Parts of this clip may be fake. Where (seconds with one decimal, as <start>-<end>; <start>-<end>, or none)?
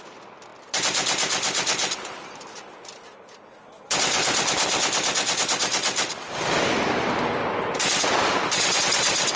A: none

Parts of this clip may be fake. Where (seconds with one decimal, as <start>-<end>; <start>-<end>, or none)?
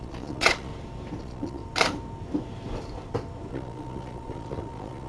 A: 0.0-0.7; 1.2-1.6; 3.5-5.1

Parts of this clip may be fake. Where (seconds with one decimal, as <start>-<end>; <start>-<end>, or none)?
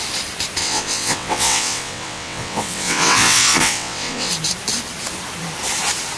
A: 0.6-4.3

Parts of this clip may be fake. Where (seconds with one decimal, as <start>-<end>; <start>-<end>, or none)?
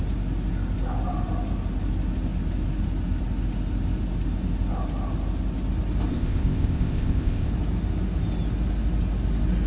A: 6.1-7.5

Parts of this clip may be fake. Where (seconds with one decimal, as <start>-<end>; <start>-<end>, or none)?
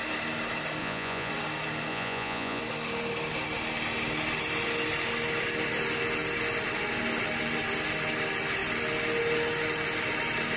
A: 0.8-1.3; 1.9-2.6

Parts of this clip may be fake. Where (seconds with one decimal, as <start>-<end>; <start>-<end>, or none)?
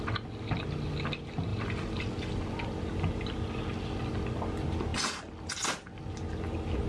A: 1.5-3.6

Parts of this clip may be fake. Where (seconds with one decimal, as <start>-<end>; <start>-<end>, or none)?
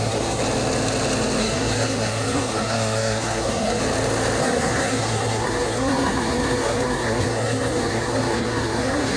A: 0.0-0.4; 1.4-3.8; 4.4-9.2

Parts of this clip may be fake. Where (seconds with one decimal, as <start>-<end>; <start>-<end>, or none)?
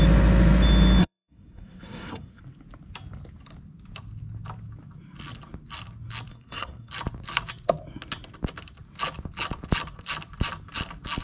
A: 1.0-2.4; 6.3-6.9